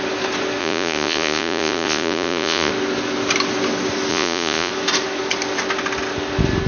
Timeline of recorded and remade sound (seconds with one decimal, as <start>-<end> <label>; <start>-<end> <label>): 0.0-0.6 recorded; 0.6-2.7 remade; 2.7-4.1 recorded; 4.1-4.7 remade; 4.7-6.7 recorded